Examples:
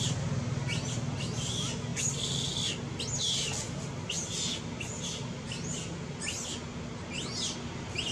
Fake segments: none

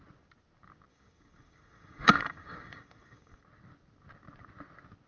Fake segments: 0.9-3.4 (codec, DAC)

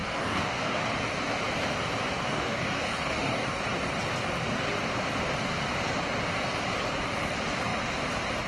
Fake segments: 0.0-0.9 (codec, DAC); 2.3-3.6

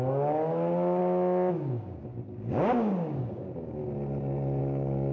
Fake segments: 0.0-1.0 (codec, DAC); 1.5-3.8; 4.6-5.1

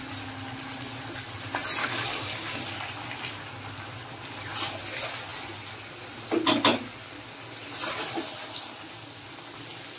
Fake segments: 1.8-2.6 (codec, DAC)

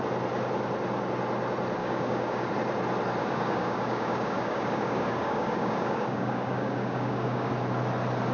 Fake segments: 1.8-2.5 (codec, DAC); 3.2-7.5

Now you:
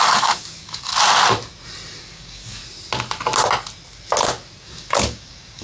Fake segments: 0.0-0.9 (codec, DAC); 2.0-2.6; 4.6-5.6